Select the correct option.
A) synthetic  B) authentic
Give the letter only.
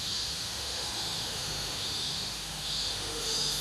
A